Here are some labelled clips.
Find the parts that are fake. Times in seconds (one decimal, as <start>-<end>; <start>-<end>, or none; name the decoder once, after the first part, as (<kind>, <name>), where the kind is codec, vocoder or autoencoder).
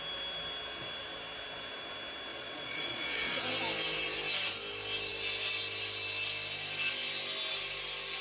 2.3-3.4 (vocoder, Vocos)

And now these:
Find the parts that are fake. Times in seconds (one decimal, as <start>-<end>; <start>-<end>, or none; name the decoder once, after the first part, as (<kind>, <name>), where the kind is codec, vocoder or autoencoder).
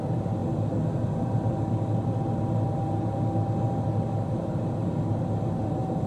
none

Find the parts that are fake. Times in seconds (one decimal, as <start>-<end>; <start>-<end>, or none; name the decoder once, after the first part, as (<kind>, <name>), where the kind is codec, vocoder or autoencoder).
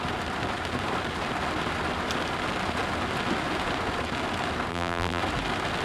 4.7-5.2 (vocoder, BigVGAN v2)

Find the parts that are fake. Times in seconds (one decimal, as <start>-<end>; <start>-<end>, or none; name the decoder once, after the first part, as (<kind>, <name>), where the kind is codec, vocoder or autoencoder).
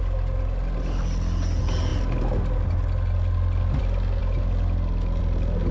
none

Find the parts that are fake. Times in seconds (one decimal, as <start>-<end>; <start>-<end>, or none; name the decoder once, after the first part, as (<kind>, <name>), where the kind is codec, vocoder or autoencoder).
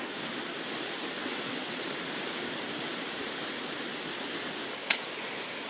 1.2-1.8 (vocoder, WaveNeXt)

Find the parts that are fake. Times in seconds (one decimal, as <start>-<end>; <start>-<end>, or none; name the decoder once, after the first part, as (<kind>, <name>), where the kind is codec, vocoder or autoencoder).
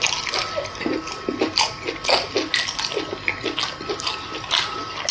none